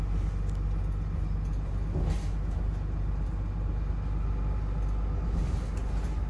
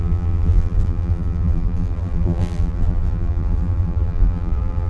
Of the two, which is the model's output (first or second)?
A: second